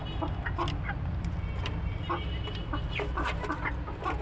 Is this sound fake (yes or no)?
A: no